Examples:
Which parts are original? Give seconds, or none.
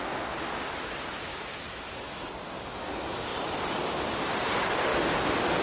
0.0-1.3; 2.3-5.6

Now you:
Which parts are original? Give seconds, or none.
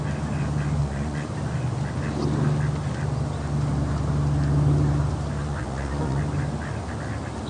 0.0-0.8; 1.3-5.4; 6.2-7.5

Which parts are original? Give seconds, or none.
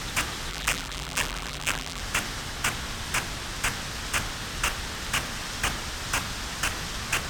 0.0-0.5; 2.0-7.3